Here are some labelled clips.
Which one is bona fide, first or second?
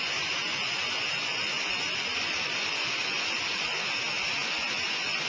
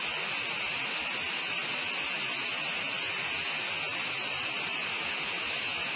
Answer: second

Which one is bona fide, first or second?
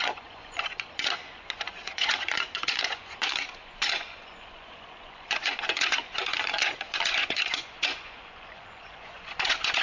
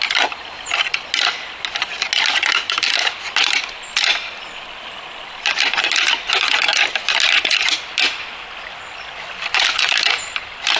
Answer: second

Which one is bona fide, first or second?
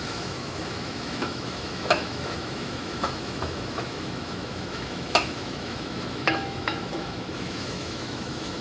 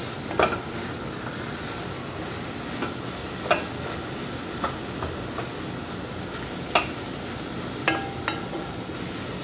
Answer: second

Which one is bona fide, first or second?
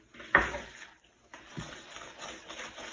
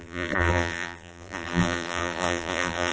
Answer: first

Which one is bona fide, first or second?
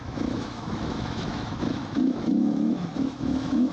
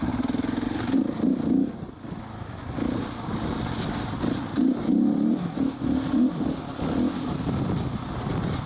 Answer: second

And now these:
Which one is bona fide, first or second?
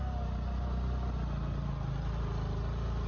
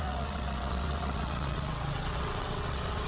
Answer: first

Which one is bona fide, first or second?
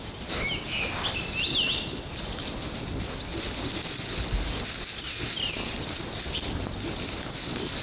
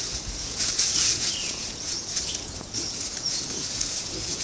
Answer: first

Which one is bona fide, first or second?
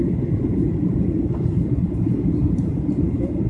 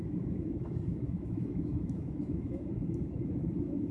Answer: first